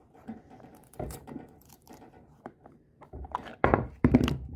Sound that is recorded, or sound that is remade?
remade